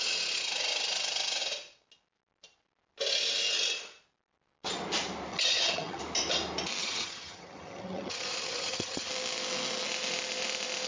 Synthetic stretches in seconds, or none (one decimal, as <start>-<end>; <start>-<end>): 5.3-6.0; 6.8-9.1